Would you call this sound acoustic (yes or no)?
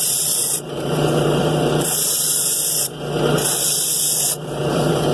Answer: no